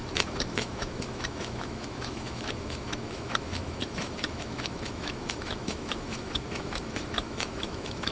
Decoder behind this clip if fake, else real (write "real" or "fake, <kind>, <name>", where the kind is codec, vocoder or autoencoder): fake, autoencoder, DAC-VAE